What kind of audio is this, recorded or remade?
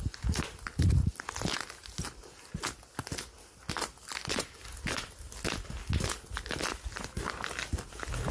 recorded